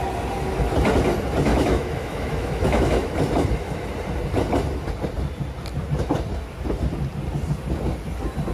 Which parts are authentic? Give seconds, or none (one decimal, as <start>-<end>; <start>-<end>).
0.0-1.5; 3.1-8.5